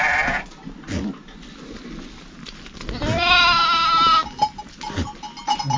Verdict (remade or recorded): recorded